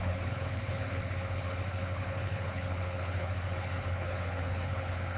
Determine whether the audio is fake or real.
fake